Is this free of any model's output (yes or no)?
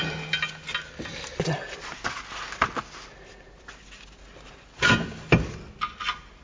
yes